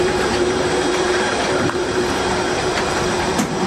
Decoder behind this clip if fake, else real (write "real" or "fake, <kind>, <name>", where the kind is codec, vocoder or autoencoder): fake, vocoder, BigVGAN v2